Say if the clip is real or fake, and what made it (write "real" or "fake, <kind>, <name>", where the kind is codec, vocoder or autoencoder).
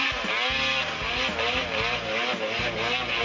real